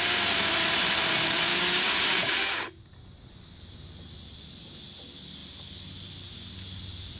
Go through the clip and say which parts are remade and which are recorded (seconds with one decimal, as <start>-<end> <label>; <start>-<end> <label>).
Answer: 0.0-1.5 recorded; 1.5-2.3 remade; 2.3-7.2 recorded